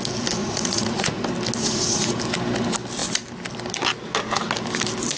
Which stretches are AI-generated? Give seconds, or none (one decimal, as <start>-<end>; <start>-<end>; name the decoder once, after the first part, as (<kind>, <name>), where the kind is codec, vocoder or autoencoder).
0.4-1.2 (vocoder, Vocos); 1.6-2.2